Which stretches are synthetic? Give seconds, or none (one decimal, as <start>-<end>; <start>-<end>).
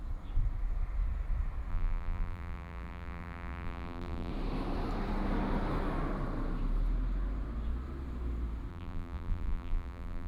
1.7-4.3; 8.7-10.3